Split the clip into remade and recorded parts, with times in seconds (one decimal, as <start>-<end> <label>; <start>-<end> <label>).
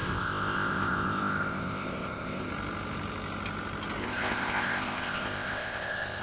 0.0-2.5 remade; 2.5-4.0 recorded; 4.0-6.2 remade